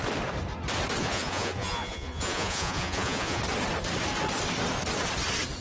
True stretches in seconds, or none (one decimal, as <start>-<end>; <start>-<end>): 0.0-1.0; 3.4-5.6